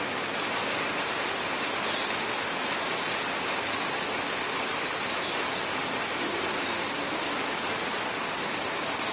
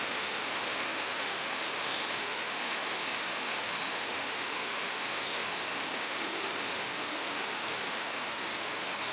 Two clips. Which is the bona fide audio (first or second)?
first